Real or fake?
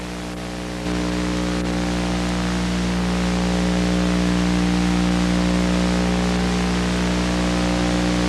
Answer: real